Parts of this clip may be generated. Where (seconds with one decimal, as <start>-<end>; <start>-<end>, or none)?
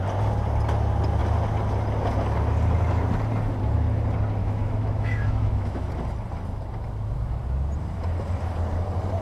4.4-5.9